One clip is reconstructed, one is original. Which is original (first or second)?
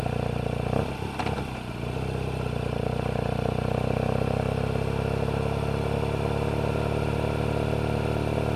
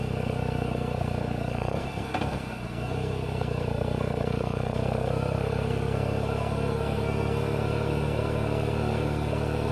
first